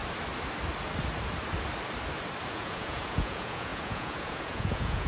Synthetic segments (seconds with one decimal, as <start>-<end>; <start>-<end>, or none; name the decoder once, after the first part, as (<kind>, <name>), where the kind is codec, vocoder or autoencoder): 2.5-5.1 (vocoder, Vocos)